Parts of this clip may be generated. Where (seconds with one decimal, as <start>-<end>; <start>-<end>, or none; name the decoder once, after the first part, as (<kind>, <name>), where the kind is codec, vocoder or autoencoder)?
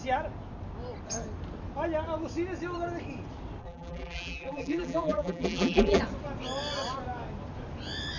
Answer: 3.6-6.0 (vocoder, BigVGAN v2)